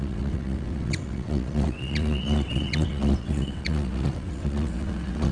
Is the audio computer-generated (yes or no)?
yes